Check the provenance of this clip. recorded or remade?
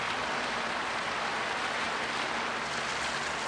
recorded